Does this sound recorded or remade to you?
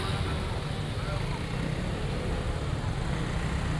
recorded